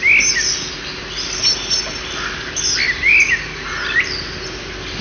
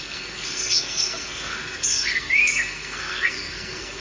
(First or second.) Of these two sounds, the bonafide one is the first